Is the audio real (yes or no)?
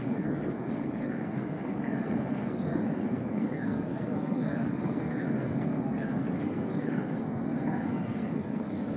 no